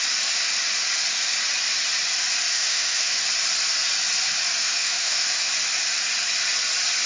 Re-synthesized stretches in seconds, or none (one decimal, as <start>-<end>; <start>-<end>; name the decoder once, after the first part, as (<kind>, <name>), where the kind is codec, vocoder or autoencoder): 2.5-3.2 (autoencoder, DAC-VAE); 4.6-5.5